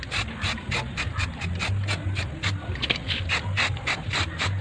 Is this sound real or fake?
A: real